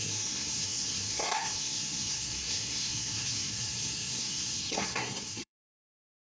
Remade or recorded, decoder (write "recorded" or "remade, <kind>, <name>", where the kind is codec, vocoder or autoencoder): remade, codec, SNAC